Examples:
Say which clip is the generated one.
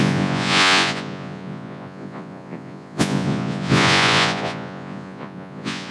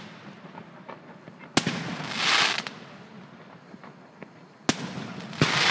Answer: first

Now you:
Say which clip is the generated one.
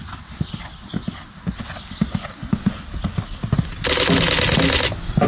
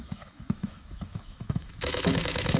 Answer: second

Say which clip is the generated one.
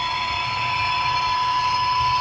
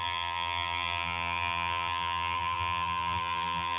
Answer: second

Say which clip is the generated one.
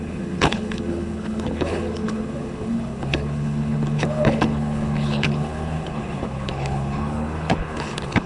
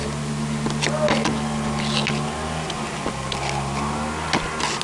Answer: first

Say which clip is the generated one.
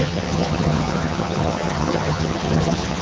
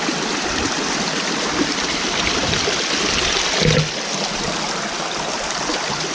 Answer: first